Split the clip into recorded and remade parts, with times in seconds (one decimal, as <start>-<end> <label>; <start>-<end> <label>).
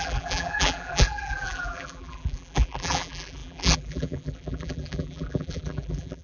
0.0-6.2 remade